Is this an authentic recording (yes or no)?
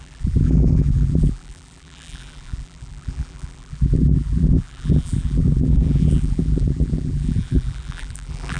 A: no